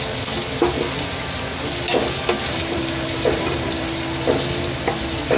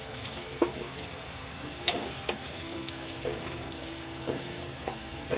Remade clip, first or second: second